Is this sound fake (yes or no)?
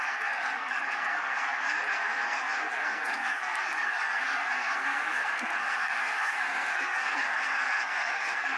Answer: yes